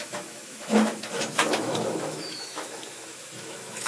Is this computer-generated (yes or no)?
yes